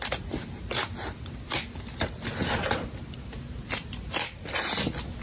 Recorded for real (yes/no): yes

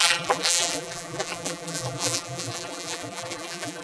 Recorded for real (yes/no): no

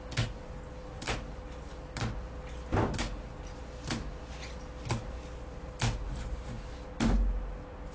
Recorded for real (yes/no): yes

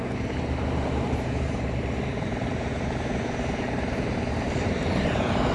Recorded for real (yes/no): no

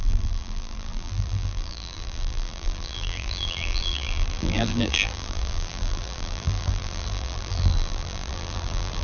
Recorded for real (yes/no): no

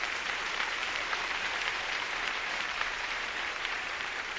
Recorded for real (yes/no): no